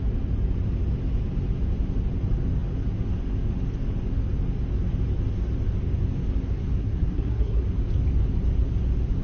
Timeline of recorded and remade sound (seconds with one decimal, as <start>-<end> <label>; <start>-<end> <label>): 0.0-6.8 recorded; 6.8-7.6 remade; 7.6-9.2 recorded